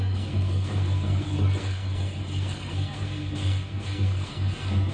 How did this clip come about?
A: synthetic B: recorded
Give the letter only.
A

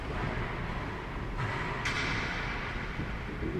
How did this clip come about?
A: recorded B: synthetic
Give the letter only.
A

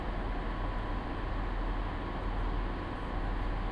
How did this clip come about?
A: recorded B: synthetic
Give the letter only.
A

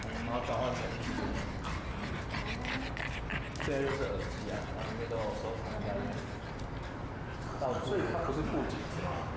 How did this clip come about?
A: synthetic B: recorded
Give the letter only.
B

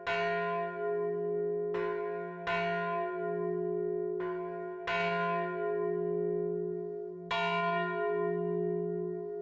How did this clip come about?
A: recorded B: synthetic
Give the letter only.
A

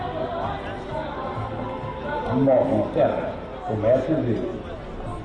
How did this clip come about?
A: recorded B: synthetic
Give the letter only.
A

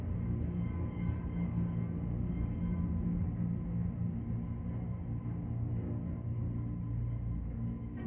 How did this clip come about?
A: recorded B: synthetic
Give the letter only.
A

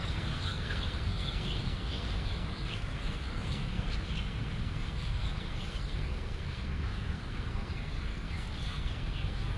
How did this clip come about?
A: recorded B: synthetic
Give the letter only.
B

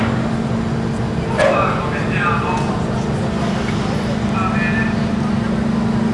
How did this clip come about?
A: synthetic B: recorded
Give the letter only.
B